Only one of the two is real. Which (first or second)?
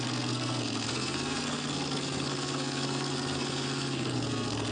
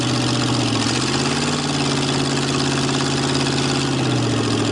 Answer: second